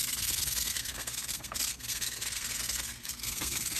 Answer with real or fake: fake